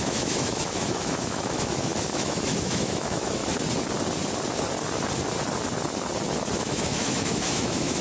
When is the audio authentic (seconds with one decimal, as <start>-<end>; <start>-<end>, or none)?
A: 3.4-6.6